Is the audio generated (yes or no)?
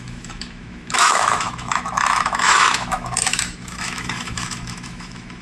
yes